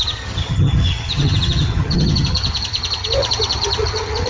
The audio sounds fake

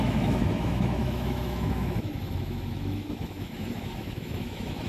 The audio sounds fake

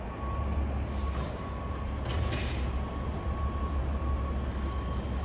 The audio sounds real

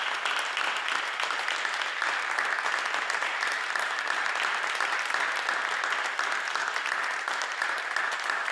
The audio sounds fake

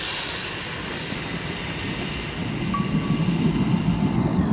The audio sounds real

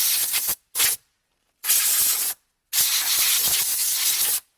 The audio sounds real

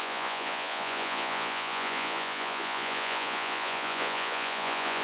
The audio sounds fake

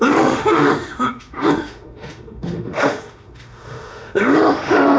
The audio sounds fake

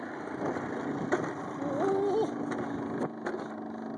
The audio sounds real